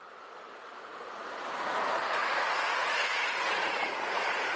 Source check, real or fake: fake